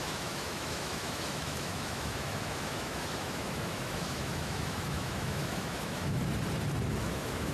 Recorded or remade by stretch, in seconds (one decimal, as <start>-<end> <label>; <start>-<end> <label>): 0.0-6.2 remade; 6.2-7.0 recorded; 7.0-7.5 remade